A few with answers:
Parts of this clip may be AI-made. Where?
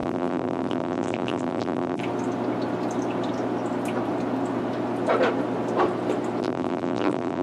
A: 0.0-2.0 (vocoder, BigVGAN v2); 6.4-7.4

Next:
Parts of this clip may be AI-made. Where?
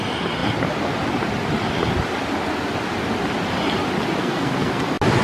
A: 4.2-4.8 (codec, SNAC)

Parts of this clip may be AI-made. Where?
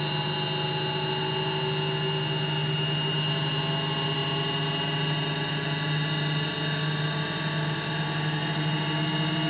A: none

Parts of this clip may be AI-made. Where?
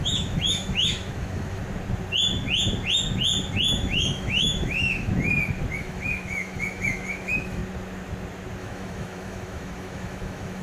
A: 0.0-1.6 (autoencoder, DAC-VAE); 3.7-5.1; 5.8-7.6; 8.6-10.6